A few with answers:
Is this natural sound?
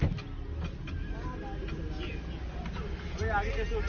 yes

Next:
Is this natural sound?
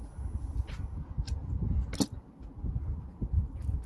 yes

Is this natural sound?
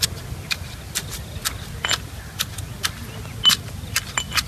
yes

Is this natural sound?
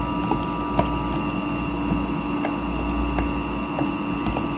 yes